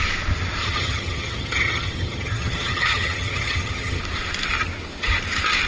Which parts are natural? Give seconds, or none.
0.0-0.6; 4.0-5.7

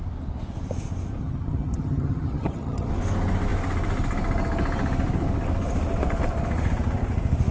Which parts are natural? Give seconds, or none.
0.0-1.2; 2.9-7.5

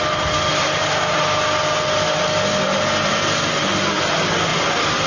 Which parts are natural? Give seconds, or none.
0.0-5.1

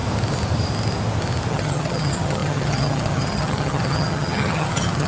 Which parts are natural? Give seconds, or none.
0.0-1.5

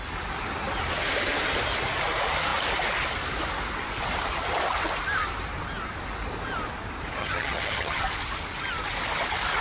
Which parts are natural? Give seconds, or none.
0.0-7.2; 8.0-9.6